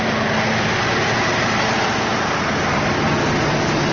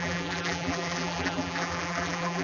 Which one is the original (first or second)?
first